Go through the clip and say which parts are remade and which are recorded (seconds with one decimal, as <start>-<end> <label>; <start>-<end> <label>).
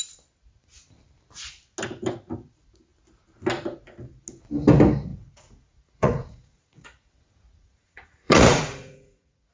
0.0-5.1 recorded; 5.1-9.5 remade